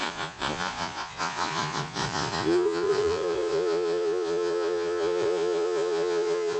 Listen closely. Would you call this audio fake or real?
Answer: fake